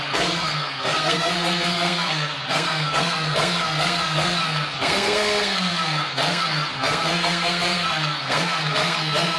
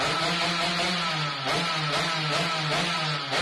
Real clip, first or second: second